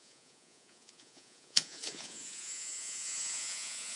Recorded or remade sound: remade